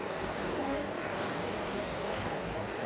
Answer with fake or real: fake